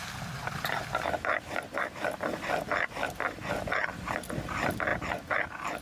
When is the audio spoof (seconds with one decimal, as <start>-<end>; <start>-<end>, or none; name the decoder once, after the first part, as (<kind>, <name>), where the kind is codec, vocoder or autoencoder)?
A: 3.5-4.9 (vocoder, BigVGAN v2)